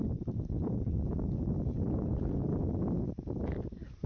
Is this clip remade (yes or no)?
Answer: no